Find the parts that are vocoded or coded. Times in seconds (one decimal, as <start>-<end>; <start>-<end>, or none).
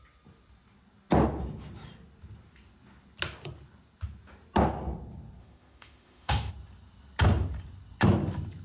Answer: 5.4-6.5